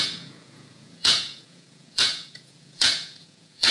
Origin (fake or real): fake